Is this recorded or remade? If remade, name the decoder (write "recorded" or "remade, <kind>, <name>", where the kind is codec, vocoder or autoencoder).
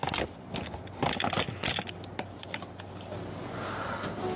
recorded